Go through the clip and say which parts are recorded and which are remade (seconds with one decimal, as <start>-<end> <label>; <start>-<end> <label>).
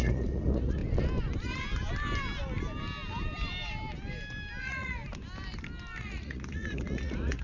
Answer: 0.0-0.8 remade; 0.8-4.6 recorded; 4.6-5.0 remade; 5.0-6.0 recorded; 6.0-7.4 remade